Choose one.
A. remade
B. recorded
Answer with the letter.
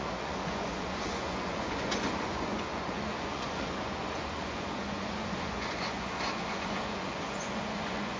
A